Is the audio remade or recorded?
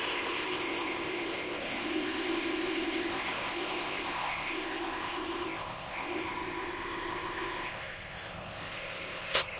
remade